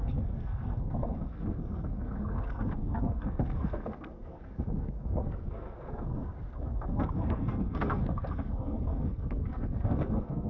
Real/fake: fake